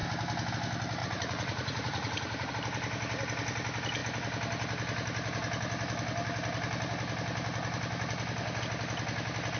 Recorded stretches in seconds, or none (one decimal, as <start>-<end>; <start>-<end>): 0.0-1.0; 2.5-9.6